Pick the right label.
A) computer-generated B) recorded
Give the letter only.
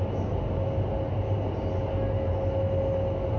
B